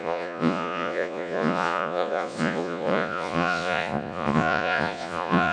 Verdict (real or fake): fake